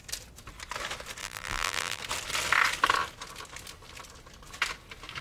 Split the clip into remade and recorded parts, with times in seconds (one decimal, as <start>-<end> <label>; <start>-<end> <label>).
0.0-1.2 recorded; 1.2-2.0 remade; 2.0-5.2 recorded